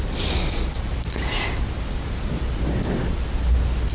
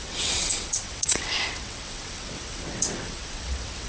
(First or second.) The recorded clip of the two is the first